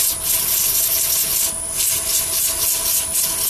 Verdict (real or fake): real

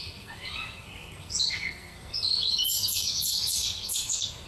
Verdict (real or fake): fake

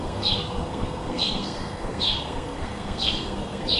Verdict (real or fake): fake